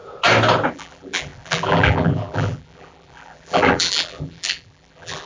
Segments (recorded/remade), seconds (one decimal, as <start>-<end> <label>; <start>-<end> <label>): 0.0-0.7 recorded; 0.7-5.3 remade